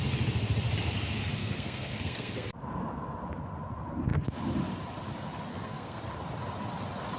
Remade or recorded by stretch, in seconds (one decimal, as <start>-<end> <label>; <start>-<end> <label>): 0.0-1.4 recorded; 1.4-2.5 remade; 2.5-5.5 recorded; 5.5-6.0 remade; 6.0-7.2 recorded